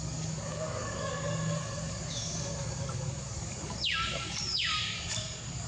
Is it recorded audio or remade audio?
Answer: remade